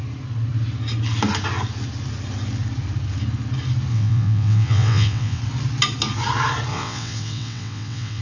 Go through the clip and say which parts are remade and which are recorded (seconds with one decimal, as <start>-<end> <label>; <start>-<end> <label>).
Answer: 0.0-3.9 recorded; 3.9-5.4 remade; 5.4-6.7 recorded; 6.7-8.2 remade